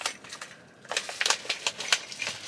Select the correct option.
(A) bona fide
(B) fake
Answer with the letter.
A